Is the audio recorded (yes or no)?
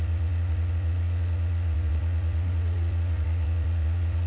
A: no